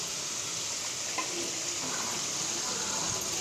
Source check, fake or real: real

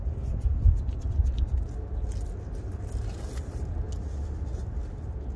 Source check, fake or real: real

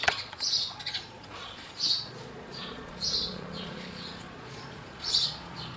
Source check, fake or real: fake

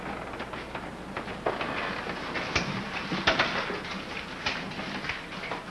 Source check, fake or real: real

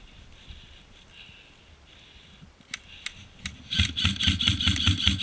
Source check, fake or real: real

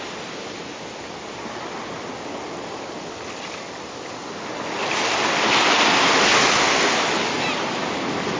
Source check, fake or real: real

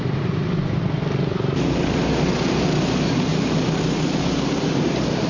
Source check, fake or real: real